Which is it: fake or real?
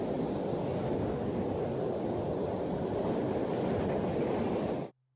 real